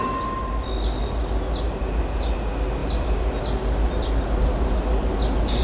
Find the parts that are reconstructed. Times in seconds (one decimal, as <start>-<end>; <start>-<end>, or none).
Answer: none